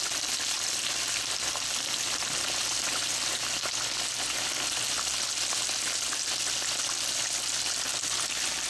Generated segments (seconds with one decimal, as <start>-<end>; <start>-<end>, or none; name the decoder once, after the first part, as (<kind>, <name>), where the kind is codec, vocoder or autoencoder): none